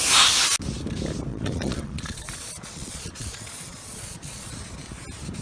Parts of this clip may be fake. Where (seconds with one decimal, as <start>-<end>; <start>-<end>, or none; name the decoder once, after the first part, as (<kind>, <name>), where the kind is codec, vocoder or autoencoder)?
1.3-4.5 (vocoder, Vocos)